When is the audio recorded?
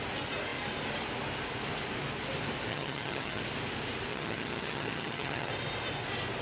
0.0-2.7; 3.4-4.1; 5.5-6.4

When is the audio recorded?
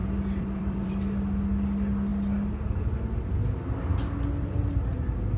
0.9-5.4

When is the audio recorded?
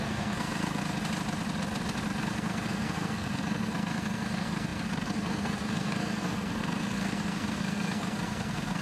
0.8-2.2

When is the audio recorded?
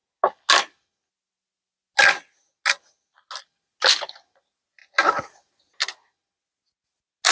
0.0-7.3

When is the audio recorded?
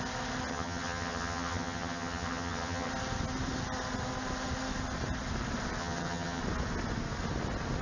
0.0-0.5; 2.9-5.8; 6.4-7.8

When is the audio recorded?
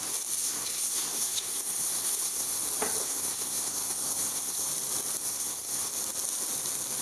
0.0-0.4; 2.6-3.0; 4.7-5.2; 5.9-7.0